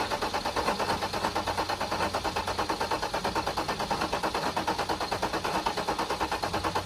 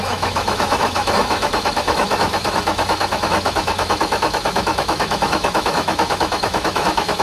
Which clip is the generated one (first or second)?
second